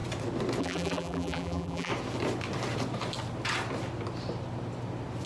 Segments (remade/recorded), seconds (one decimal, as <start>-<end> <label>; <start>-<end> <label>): 0.0-0.6 recorded; 0.6-1.9 remade; 1.9-5.3 recorded